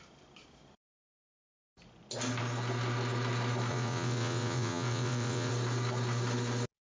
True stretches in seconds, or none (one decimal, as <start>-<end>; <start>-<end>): 0.0-3.7; 5.5-6.9